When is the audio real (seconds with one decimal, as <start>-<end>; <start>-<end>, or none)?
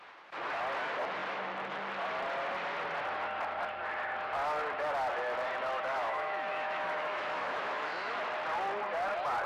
0.0-5.9; 8.2-9.5